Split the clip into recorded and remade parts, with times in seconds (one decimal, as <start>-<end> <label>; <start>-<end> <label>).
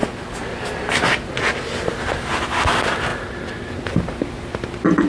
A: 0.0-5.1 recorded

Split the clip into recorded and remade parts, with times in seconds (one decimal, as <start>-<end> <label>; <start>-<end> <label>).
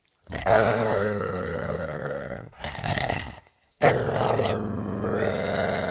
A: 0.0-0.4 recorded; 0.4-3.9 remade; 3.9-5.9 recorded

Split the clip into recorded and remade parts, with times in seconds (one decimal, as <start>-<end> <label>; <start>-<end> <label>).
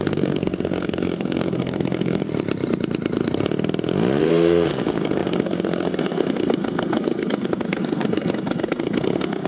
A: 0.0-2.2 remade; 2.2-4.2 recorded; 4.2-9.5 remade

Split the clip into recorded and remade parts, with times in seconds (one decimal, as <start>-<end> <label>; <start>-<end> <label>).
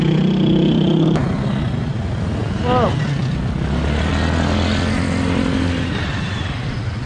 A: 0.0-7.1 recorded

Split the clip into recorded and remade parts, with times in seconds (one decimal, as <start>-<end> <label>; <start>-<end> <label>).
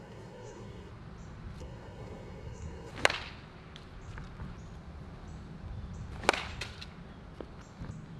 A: 0.0-0.9 remade; 0.9-1.6 recorded; 1.6-2.9 remade; 2.9-8.2 recorded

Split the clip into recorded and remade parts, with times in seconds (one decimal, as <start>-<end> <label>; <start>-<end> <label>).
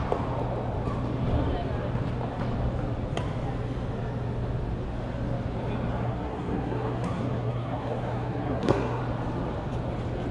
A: 0.0-6.0 recorded; 6.0-9.0 remade; 9.0-10.3 recorded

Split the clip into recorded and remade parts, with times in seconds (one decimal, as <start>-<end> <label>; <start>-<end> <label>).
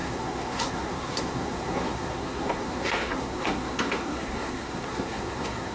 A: 0.0-5.7 remade